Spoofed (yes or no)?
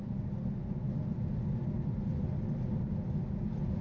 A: no